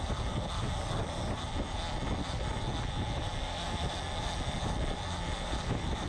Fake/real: real